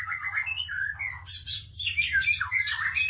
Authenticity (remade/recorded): recorded